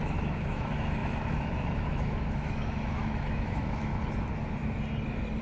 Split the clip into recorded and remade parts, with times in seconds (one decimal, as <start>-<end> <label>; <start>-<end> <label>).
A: 0.0-3.9 remade; 3.9-5.4 recorded